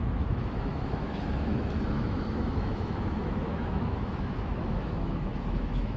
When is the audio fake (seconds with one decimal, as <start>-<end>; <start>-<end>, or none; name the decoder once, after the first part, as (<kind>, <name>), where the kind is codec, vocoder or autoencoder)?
0.0-6.0 (autoencoder, DAC-VAE)